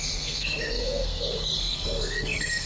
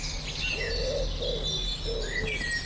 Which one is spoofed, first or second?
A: first